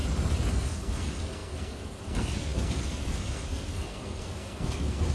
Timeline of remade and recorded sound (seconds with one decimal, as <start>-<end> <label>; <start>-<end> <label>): 0.0-0.5 recorded; 0.5-5.1 remade